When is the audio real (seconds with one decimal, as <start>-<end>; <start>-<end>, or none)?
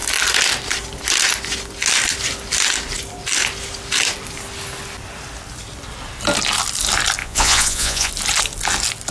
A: 0.0-7.2; 8.1-9.1